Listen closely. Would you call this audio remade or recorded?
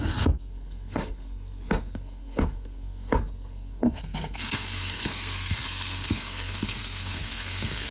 remade